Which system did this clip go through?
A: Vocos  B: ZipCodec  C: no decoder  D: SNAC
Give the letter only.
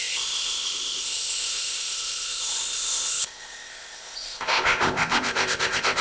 B